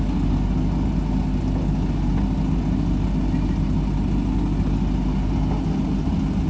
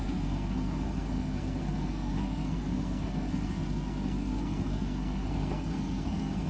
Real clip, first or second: first